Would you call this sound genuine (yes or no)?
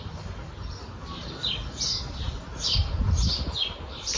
yes